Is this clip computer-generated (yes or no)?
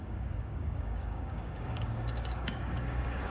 yes